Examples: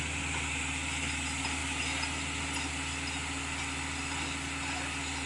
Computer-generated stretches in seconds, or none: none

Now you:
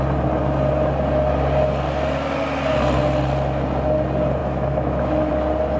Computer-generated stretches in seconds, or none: 4.4-5.3

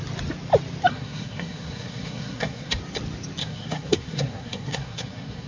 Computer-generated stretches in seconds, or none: 0.9-2.8; 3.4-5.5

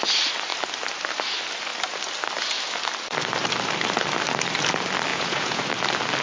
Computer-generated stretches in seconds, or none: 5.1-5.6

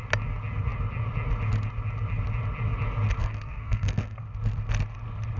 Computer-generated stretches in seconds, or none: 3.2-4.2